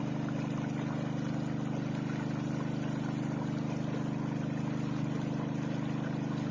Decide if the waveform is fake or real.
real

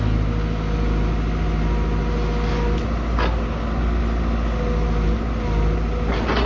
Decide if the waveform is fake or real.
real